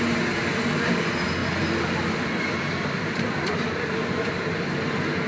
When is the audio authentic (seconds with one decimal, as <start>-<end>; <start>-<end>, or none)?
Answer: 0.0-1.4; 4.6-5.3

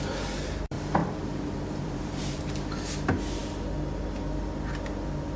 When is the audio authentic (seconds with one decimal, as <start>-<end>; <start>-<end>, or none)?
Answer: 0.0-1.0; 2.4-5.4

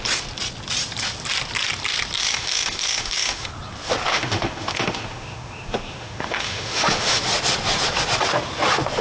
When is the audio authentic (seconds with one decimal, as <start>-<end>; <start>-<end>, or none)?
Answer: 0.0-2.2; 3.5-4.1; 7.2-9.0

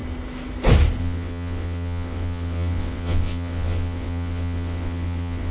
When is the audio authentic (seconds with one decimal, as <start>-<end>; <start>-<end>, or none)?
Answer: 0.0-1.0

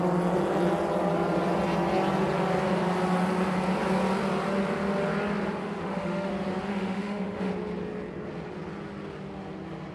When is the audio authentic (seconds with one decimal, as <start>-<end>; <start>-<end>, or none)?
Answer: 0.0-5.6; 6.3-6.7; 7.5-9.9

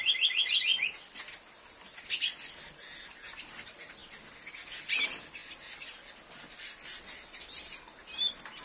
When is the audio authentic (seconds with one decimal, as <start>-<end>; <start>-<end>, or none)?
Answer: 0.0-8.6